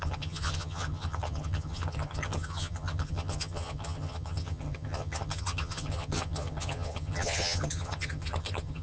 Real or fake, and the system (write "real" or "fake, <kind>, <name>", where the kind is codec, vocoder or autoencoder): fake, vocoder, HiFi-GAN